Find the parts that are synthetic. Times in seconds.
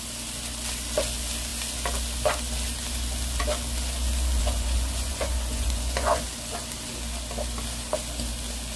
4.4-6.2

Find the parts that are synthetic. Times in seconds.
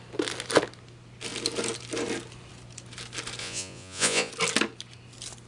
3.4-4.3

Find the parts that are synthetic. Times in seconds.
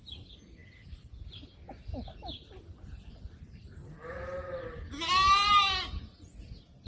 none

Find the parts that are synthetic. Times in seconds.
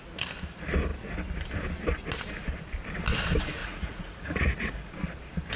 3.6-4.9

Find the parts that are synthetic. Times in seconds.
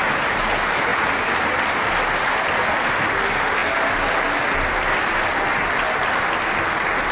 none